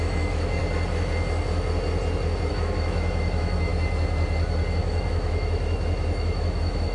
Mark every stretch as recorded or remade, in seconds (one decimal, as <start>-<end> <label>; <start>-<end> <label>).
0.0-0.6 remade; 0.6-2.5 recorded; 2.5-3.7 remade; 3.7-4.8 recorded; 4.8-6.9 remade